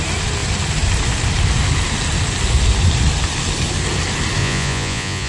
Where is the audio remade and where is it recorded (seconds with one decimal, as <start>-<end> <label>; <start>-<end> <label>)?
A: 0.0-4.4 recorded; 4.4-5.3 remade